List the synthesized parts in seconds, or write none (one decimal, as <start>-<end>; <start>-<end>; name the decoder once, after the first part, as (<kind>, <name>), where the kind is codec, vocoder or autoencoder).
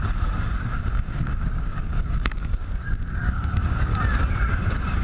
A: 0.0-3.9 (codec, DAC); 4.5-5.0